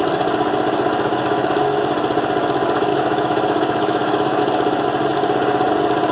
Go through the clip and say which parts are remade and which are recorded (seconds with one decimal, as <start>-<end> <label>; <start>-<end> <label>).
0.0-1.1 recorded; 1.1-1.8 remade; 1.8-2.9 recorded; 2.9-4.4 remade; 4.4-6.1 recorded